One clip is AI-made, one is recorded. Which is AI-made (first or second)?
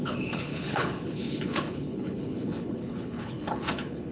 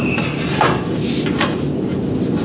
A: first